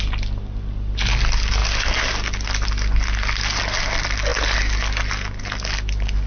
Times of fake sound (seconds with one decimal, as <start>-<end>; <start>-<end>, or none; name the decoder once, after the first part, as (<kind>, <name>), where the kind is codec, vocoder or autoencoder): none